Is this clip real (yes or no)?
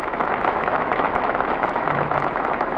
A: no